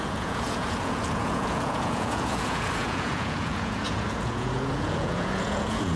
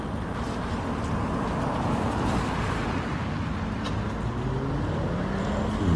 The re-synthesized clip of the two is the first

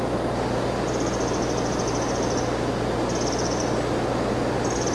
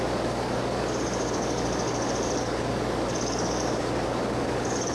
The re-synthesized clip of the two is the second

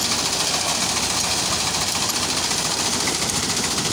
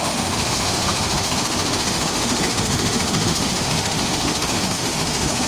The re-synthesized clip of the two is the second